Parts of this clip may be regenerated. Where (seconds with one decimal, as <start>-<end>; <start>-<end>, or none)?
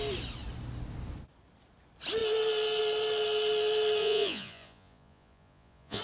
4.0-6.0